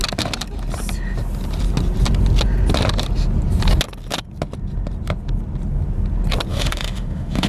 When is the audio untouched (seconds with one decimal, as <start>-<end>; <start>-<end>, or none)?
0.0-6.5